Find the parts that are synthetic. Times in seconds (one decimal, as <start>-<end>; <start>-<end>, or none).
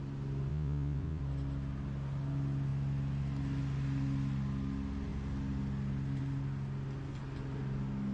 0.5-1.2